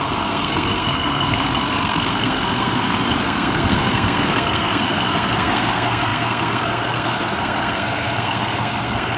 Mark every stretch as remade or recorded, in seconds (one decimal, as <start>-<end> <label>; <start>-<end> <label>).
0.0-9.2 remade